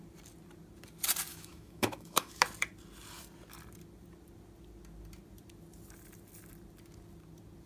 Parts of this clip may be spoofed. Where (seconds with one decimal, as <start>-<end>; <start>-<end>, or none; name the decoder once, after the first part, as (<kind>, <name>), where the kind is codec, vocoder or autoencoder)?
1.3-2.4 (autoencoder, DAC-VAE)